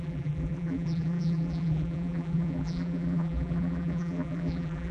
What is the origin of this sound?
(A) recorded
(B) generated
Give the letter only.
B